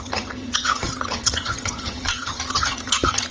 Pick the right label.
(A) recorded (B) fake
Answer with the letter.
B